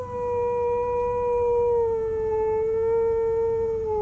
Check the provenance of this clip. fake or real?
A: real